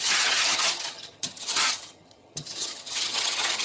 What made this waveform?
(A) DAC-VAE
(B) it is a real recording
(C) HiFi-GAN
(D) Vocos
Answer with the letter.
C